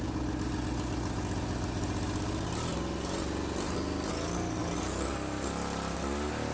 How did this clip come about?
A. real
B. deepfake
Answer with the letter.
A